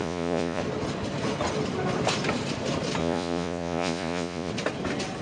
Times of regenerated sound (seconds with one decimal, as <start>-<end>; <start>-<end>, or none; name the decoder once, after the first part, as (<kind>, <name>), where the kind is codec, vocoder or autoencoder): 0.0-0.6 (vocoder, Vocos); 3.0-4.5